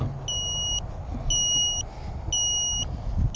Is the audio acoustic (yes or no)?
yes